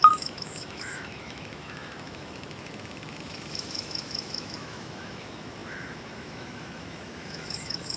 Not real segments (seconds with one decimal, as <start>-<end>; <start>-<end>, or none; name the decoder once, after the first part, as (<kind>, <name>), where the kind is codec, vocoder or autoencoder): 0.0-8.0 (autoencoder, DAC-VAE)